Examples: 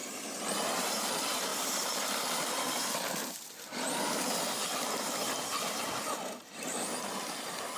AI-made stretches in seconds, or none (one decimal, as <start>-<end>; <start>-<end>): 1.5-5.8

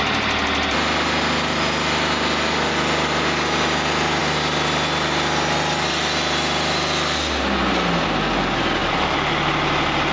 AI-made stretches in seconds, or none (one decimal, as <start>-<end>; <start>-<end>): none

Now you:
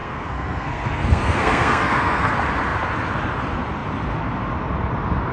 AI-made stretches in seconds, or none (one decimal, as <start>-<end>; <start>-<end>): 0.0-2.3

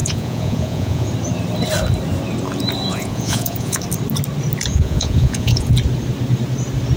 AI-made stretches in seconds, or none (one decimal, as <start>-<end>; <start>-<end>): 0.0-1.1; 2.9-3.8; 4.7-5.7

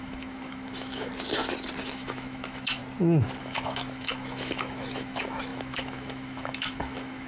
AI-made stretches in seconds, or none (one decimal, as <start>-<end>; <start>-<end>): 0.0-1.1; 1.8-2.8; 3.4-7.3

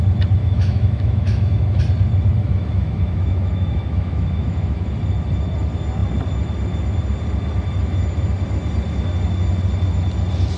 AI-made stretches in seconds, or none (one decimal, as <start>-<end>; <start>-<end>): 0.4-1.8; 2.4-4.9

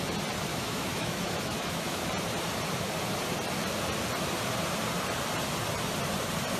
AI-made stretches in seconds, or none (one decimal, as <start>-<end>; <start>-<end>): 0.5-2.1

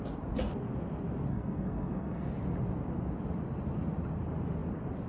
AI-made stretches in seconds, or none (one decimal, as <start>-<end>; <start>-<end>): 1.3-2.3